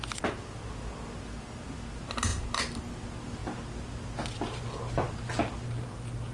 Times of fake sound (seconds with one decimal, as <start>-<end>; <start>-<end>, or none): none